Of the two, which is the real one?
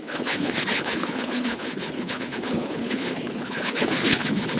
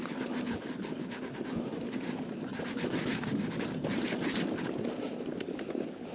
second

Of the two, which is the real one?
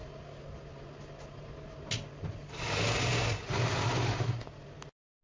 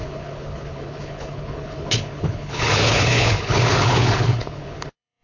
first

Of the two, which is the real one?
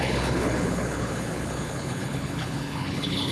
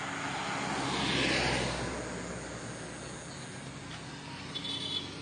second